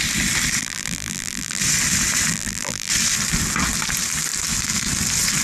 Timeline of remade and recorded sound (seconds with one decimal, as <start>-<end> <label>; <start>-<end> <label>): 0.0-0.6 recorded; 0.6-1.6 remade; 1.6-2.3 recorded; 2.3-2.9 remade; 2.9-5.4 recorded

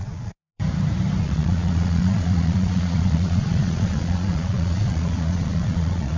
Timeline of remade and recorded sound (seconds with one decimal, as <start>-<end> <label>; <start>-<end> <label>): 0.0-0.5 remade; 0.5-1.2 recorded; 1.2-6.2 remade